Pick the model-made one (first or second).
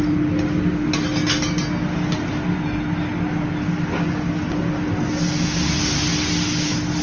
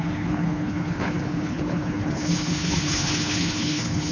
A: second